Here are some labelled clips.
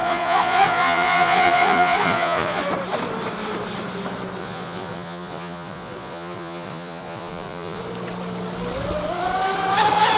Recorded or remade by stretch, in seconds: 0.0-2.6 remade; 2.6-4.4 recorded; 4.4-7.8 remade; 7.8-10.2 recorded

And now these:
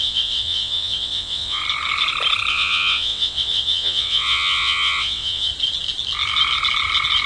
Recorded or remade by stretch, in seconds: 0.0-1.6 remade; 1.6-2.5 recorded; 2.5-5.5 remade; 5.5-7.3 recorded

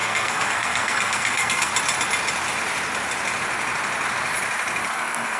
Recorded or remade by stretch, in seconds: 0.0-1.7 remade; 1.7-4.9 recorded; 4.9-5.4 remade